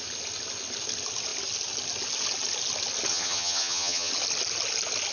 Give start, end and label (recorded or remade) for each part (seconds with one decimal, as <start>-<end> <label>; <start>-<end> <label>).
0.0-3.1 recorded; 3.1-4.1 remade; 4.1-5.1 recorded